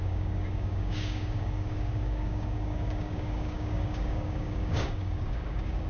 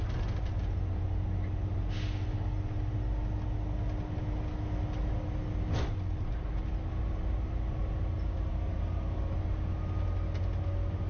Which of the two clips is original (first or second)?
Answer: second